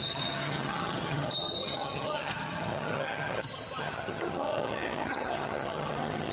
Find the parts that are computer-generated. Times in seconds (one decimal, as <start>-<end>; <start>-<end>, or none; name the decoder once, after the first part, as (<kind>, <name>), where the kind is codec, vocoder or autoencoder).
0.0-6.3 (vocoder, HiFi-GAN)